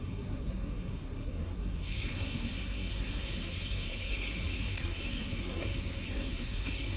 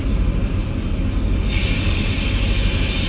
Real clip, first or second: second